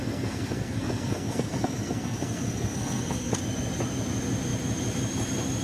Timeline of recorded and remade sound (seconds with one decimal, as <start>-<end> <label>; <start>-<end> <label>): 0.0-3.4 remade; 3.4-5.6 recorded